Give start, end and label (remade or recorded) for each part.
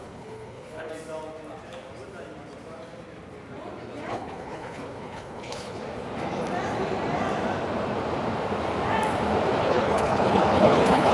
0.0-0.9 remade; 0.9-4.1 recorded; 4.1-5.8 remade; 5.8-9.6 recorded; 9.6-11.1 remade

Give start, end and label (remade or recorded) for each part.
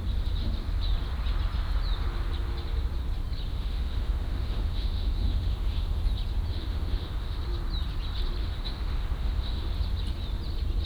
0.0-3.5 recorded; 3.5-6.0 remade; 6.0-6.5 recorded; 6.5-7.4 remade; 7.4-8.4 recorded; 8.4-9.7 remade; 9.7-10.9 recorded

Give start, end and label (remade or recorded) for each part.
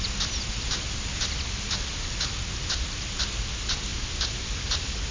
0.0-5.1 recorded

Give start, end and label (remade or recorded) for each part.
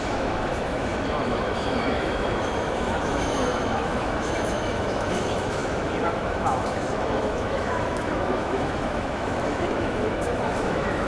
0.0-11.1 remade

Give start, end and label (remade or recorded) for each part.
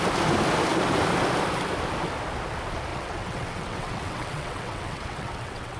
0.0-2.9 recorded; 2.9-5.8 remade